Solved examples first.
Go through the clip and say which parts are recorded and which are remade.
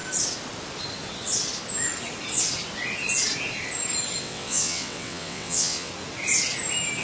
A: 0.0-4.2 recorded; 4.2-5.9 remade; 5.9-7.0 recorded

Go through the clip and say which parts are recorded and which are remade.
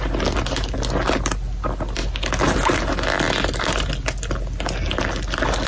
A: 0.0-5.7 recorded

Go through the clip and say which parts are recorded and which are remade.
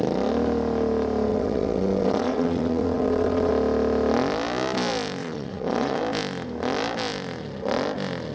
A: 0.0-1.3 recorded; 1.3-3.5 remade; 3.5-5.2 recorded; 5.2-6.0 remade; 6.0-8.3 recorded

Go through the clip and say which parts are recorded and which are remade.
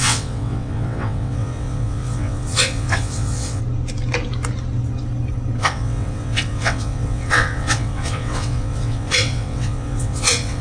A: 0.0-3.6 remade; 3.6-5.6 recorded; 5.6-10.6 remade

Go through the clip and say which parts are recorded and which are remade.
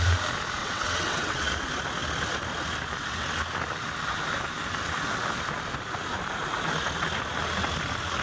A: 0.0-0.6 recorded; 0.6-1.5 remade; 1.5-8.2 recorded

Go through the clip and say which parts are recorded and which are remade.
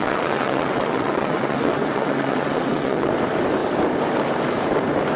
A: 0.0-3.1 remade; 3.1-5.2 recorded